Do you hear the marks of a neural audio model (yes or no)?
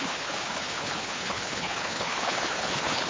yes